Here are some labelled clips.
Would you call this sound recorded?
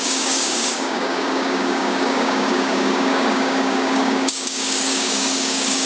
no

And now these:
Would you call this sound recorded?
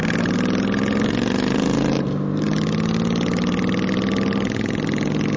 yes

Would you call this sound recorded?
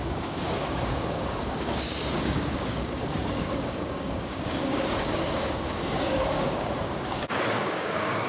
no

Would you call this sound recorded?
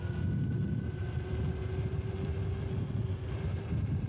yes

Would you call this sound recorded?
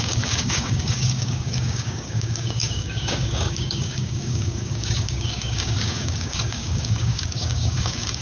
no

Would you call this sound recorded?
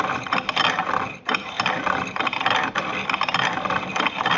yes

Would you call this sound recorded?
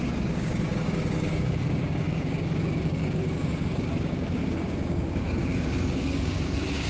no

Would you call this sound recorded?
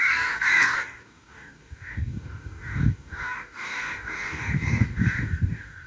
no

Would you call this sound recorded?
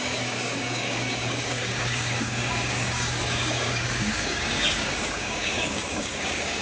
no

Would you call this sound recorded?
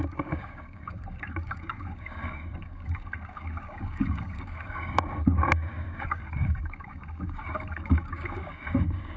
no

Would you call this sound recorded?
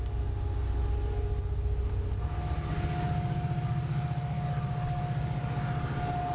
yes